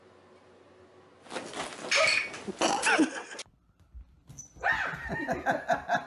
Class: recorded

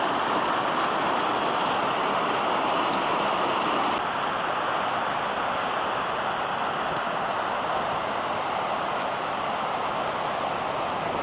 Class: recorded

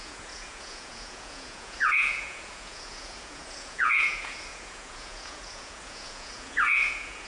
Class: remade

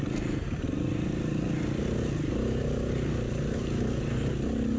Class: recorded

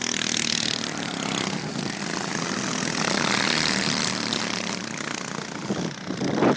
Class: recorded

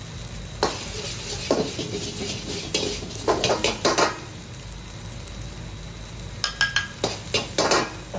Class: recorded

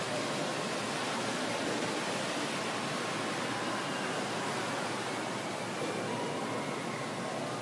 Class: recorded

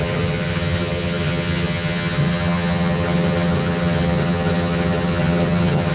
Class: remade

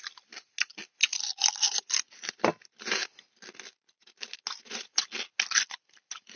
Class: recorded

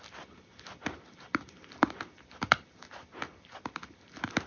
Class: recorded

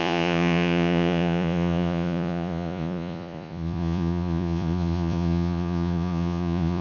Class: remade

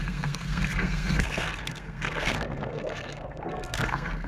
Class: remade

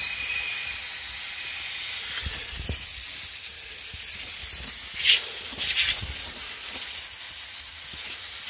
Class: recorded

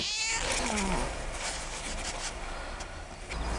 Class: recorded